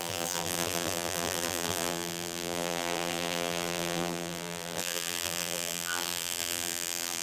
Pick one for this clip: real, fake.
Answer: fake